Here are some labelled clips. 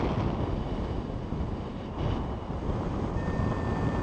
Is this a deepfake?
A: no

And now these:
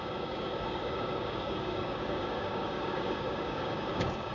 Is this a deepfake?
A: yes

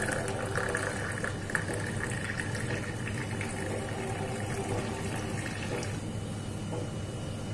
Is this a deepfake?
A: no